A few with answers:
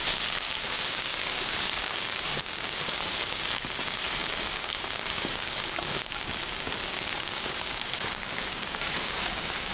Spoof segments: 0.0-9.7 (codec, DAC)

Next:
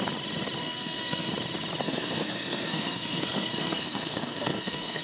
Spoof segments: 0.6-1.3 (codec, SNAC); 1.8-5.0

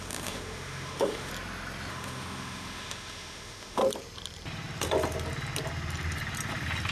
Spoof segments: 0.0-1.3 (autoencoder, DAC-VAE); 1.9-3.8

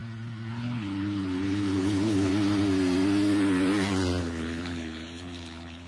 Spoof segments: 0.5-2.3 (codec, HILCodec); 4.2-5.9